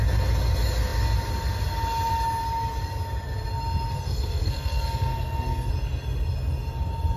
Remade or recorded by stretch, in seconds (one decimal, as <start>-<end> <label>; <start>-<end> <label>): 0.0-3.9 recorded; 3.9-5.7 remade; 5.7-7.2 recorded